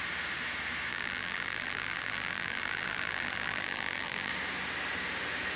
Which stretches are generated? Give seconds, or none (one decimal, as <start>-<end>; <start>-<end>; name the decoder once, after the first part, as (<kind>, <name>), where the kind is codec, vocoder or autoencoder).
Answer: 0.9-4.3 (vocoder, BigVGAN v2)